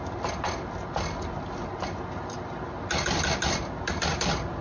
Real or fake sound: real